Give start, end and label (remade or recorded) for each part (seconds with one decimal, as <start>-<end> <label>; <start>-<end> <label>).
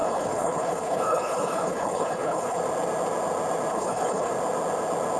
0.0-2.6 remade; 2.6-3.7 recorded; 3.7-4.3 remade; 4.3-5.2 recorded